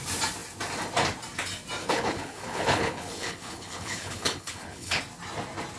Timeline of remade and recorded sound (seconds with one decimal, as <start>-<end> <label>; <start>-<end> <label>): 0.0-1.8 recorded; 1.8-5.0 remade; 5.0-5.8 recorded